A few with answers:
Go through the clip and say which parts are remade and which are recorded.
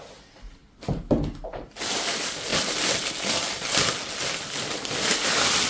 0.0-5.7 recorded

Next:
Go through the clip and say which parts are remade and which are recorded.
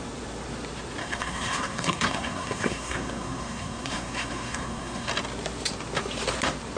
0.0-1.0 recorded; 1.0-5.1 remade; 5.1-6.8 recorded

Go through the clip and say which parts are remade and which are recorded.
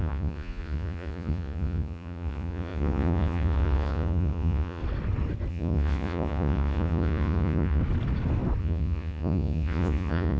0.0-4.8 remade; 4.8-5.5 recorded; 5.5-7.8 remade; 7.8-8.6 recorded; 8.6-10.4 remade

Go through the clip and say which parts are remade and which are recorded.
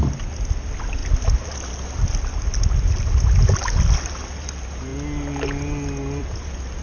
0.0-6.8 recorded